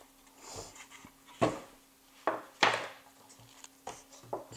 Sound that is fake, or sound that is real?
real